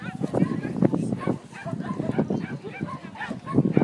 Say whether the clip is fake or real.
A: real